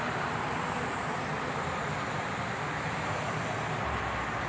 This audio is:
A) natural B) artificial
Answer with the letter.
B